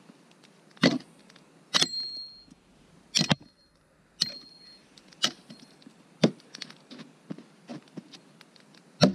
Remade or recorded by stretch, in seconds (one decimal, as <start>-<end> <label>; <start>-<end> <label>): 0.0-9.1 recorded